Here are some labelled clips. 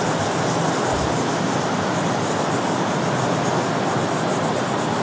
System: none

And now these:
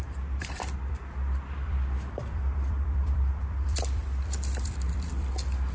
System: vocoder, BigVGAN v2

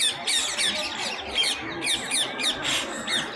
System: none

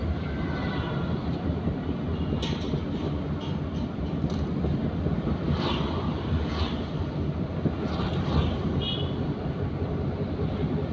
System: none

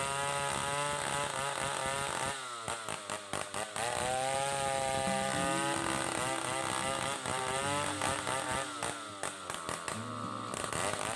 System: none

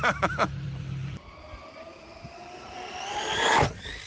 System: vocoder, BigVGAN v2